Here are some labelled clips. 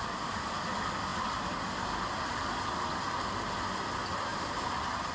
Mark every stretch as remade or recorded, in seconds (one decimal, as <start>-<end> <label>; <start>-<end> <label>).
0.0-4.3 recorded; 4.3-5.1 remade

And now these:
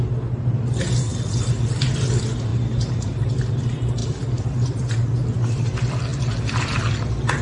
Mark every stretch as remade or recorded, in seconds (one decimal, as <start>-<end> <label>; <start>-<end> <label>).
0.0-2.5 recorded; 2.5-3.6 remade; 3.6-7.4 recorded

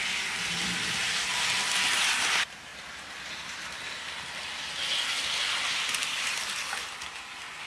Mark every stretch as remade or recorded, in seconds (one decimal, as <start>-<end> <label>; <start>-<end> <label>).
0.0-1.6 remade; 1.6-2.2 recorded; 2.2-2.7 remade; 2.7-6.4 recorded; 6.4-7.7 remade

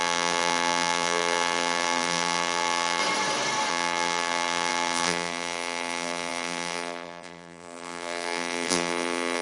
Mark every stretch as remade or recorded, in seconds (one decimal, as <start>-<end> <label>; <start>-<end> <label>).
0.0-3.0 remade; 3.0-3.7 recorded; 3.7-9.4 remade

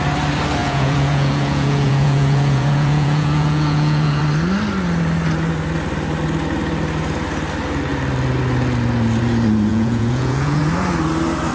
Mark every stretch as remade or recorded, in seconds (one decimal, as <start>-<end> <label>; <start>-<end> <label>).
0.0-0.6 recorded; 0.6-4.2 remade; 4.2-9.7 recorded; 9.7-10.6 remade; 10.6-11.5 recorded